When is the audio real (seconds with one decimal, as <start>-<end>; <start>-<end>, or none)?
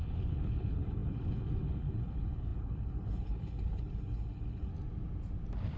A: 4.7-5.8